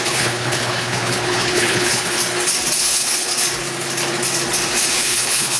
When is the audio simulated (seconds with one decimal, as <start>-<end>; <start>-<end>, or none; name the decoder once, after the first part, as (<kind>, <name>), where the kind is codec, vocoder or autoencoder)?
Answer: 0.0-2.2 (codec, HILCodec); 2.8-3.3; 4.9-5.6